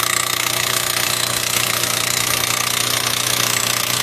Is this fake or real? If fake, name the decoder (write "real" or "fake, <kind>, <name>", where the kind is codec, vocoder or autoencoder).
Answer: fake, autoencoder, DAC-VAE